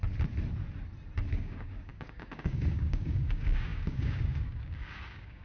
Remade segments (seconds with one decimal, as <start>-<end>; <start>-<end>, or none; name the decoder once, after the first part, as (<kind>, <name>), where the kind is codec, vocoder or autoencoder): 1.3-5.4 (codec, DAC)